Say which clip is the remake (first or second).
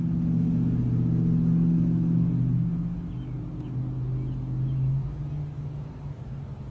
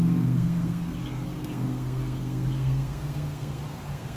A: second